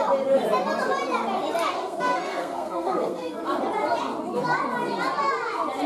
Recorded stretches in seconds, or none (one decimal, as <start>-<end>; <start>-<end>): 0.0-1.7; 3.4-5.9